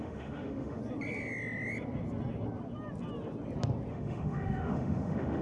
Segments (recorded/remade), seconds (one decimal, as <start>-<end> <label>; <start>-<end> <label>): 0.0-0.8 remade; 0.8-3.9 recorded; 3.9-5.4 remade